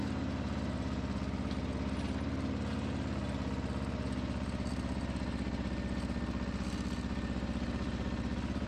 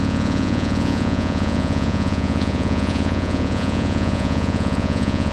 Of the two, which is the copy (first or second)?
second